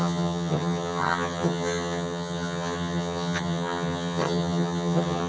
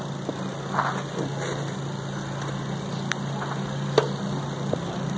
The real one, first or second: second